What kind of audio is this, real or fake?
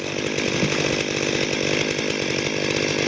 real